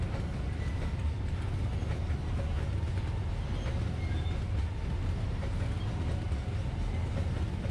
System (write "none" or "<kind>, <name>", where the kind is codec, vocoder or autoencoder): none